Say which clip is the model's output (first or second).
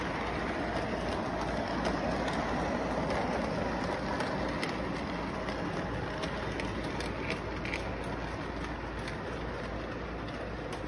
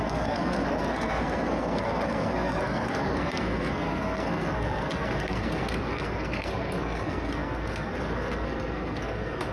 second